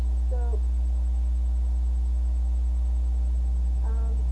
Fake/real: real